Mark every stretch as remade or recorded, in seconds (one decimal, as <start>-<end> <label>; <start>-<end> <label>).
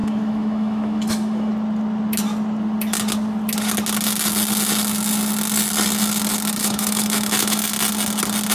0.0-1.5 remade; 1.5-6.6 recorded; 6.6-7.6 remade; 7.6-8.5 recorded